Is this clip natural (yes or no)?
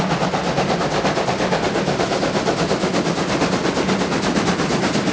yes